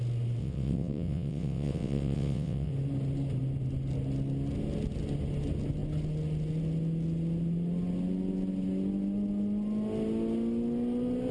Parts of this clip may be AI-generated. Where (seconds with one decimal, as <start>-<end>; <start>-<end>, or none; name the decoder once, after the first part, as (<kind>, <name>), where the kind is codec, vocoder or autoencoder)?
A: 0.4-2.7 (vocoder, WaveNeXt)